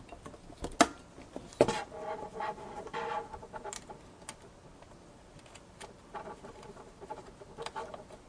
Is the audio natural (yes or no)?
yes